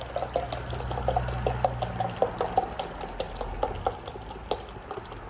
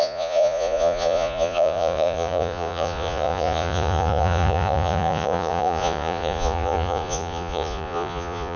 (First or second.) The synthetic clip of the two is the second